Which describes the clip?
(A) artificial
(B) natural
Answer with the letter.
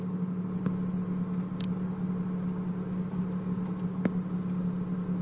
B